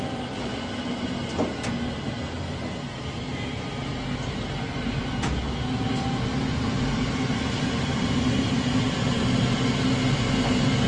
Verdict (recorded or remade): recorded